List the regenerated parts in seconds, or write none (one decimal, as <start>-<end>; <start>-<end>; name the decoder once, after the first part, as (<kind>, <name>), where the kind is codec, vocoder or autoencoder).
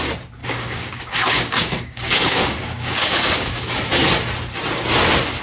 0.4-3.6 (codec, DAC)